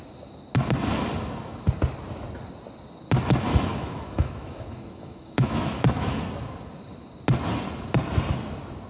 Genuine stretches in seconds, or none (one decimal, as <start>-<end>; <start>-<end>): 0.0-3.7; 6.2-8.9